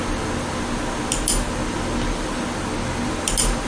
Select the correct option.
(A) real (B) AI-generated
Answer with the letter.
A